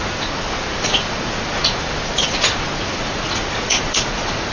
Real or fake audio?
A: fake